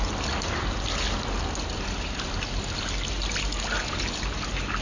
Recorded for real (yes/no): yes